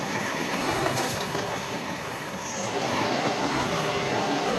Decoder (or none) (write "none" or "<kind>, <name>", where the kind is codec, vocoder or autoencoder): codec, SNAC